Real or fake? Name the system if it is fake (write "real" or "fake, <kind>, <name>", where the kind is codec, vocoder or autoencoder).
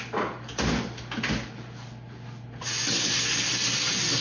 real